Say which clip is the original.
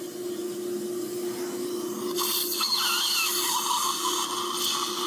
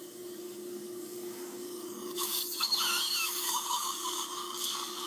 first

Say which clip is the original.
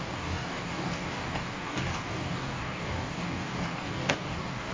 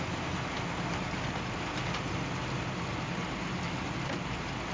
second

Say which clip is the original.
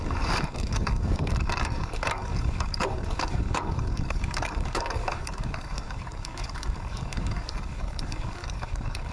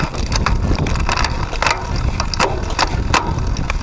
second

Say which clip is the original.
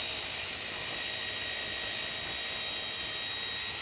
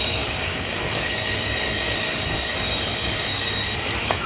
first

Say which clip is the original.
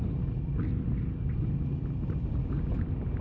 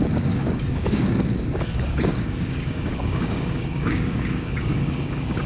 first